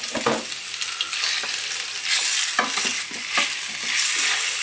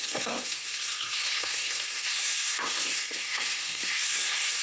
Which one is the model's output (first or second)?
second